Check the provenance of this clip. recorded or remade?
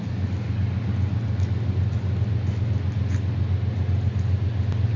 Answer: recorded